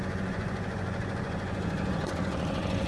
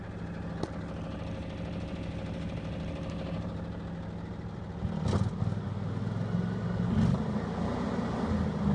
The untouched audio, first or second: second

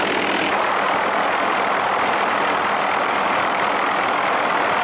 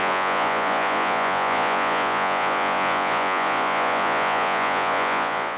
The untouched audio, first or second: first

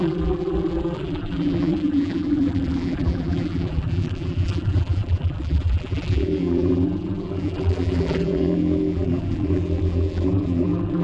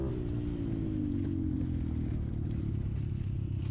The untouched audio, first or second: second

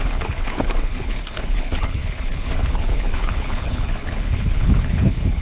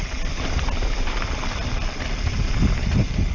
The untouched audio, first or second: second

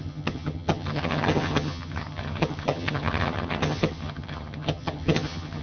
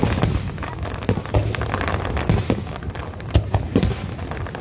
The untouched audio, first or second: second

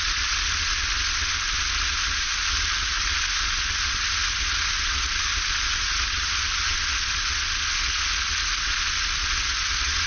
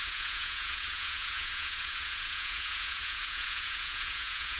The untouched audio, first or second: first